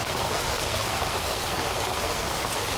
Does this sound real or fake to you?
fake